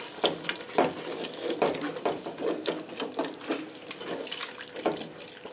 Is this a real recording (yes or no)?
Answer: yes